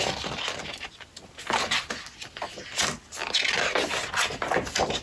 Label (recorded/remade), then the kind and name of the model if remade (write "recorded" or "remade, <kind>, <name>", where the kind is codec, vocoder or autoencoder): recorded